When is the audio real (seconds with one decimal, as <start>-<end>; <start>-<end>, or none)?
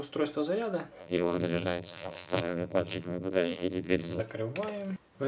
0.0-1.0; 4.2-5.3